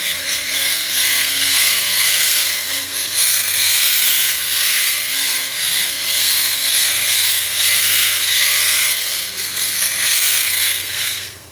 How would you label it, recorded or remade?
remade